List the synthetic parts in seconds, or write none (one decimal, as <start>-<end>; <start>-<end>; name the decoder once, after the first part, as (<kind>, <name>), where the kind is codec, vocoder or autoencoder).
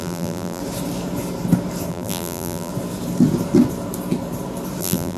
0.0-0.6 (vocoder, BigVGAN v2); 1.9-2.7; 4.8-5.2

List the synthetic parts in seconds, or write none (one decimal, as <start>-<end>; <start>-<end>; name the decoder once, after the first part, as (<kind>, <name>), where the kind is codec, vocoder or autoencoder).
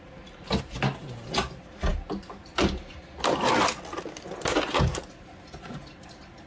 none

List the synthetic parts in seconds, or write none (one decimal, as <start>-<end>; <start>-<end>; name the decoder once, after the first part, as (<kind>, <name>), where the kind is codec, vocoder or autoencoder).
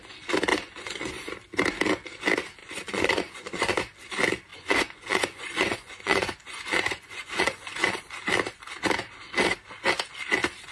0.5-1.1 (vocoder, Vocos); 2.6-3.8; 4.5-8.0